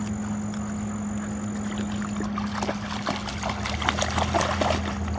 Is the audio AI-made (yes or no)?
no